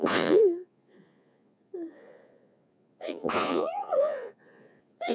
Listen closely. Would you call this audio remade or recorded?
remade